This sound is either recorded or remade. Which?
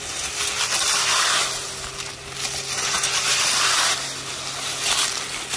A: recorded